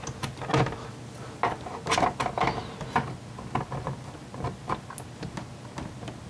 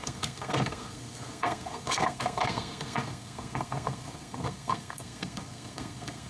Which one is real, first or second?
first